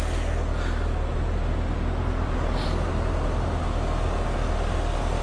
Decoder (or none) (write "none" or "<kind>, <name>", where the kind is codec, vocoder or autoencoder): none